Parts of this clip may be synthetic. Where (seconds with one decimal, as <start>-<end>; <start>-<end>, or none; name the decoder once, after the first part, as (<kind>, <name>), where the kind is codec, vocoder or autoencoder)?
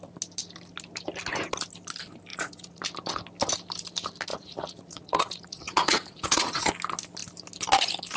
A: 2.3-2.8 (vocoder, Vocos); 4.3-6.7